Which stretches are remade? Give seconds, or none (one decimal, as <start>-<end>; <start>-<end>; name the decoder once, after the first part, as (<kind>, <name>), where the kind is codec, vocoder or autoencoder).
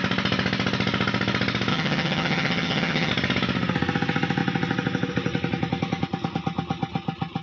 1.7-3.1 (vocoder, HiFi-GAN)